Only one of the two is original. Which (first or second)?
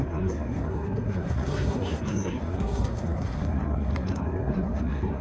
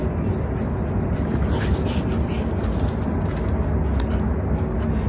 second